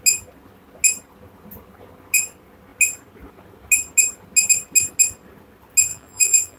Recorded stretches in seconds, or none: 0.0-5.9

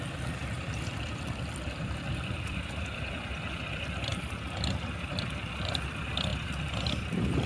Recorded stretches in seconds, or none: 4.1-5.1; 6.3-7.0